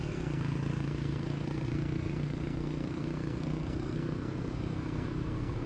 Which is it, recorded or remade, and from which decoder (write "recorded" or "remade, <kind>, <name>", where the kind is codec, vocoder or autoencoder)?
remade, codec, SNAC